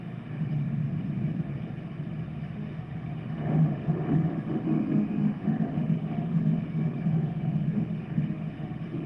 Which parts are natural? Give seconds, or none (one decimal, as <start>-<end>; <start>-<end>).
0.8-2.3